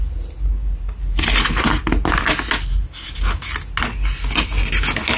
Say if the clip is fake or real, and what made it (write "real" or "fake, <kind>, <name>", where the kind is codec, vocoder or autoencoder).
real